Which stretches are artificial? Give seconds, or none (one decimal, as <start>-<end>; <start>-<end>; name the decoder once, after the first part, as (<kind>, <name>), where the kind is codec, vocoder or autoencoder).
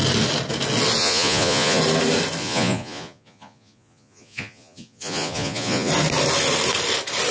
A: 1.0-1.8 (vocoder, Vocos); 2.4-5.9